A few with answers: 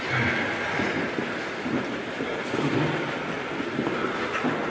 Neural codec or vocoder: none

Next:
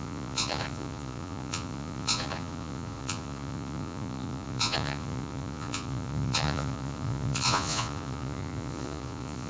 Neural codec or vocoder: vocoder, Vocos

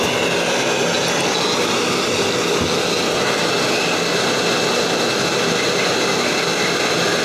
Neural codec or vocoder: none